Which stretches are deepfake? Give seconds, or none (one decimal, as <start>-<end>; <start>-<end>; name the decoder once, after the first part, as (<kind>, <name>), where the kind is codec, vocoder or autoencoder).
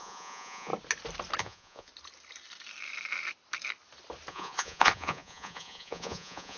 0.0-0.7 (vocoder, Vocos); 1.4-1.9; 4.3-6.6